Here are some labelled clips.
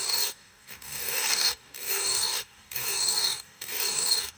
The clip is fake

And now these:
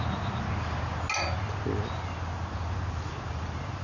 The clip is real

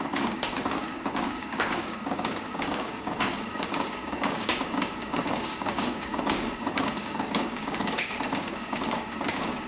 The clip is fake